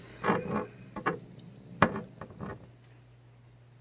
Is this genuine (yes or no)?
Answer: yes